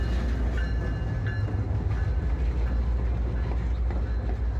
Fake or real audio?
real